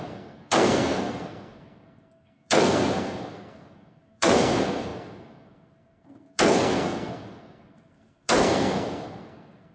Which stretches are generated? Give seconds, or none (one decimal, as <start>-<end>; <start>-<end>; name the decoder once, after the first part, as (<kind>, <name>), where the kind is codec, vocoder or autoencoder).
0.0-9.7 (codec, SNAC)